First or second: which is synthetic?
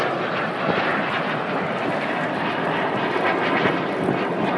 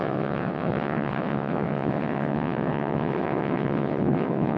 second